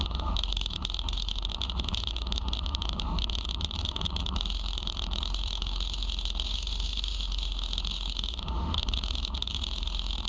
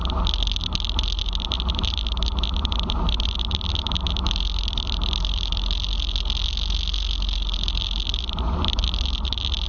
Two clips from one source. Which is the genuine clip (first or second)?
second